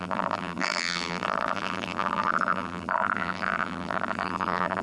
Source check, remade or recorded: remade